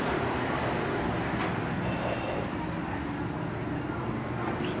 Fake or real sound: real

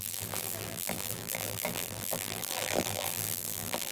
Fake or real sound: fake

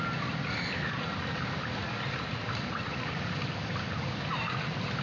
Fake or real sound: real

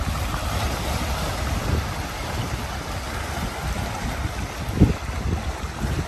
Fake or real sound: real